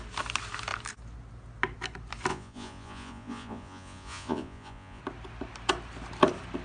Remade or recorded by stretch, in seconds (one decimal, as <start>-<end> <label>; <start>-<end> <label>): 0.0-2.3 recorded; 2.3-5.0 remade; 5.0-6.6 recorded